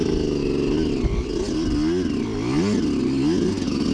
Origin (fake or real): real